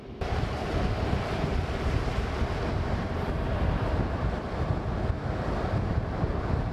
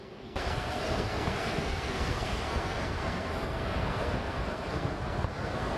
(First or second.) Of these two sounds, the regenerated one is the second